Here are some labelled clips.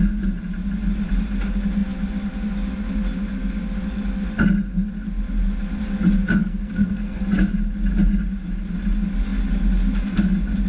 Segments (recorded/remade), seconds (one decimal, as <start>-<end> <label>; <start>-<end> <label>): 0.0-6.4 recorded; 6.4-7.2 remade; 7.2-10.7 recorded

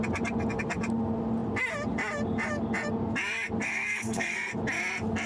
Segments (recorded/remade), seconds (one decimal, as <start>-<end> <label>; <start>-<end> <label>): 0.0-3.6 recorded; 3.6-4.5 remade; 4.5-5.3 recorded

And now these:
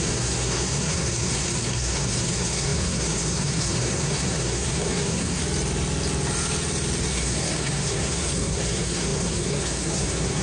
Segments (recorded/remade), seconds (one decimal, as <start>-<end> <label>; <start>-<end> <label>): 0.0-5.4 remade; 5.4-7.1 recorded; 7.1-10.4 remade

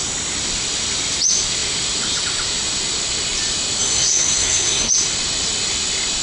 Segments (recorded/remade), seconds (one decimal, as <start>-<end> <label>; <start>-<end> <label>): 0.0-3.8 recorded; 3.8-4.9 remade; 4.9-6.2 recorded

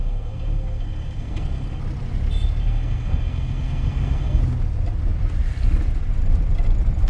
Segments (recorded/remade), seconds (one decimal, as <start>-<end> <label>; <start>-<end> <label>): 0.0-1.8 remade; 1.8-2.6 recorded; 2.6-4.4 remade; 4.4-7.1 recorded